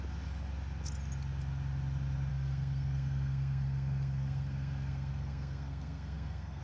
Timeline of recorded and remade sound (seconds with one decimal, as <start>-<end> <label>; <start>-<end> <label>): 0.0-2.3 recorded; 2.3-6.6 remade